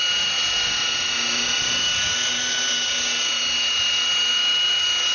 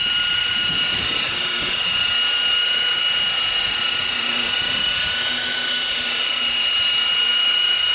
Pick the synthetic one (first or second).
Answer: second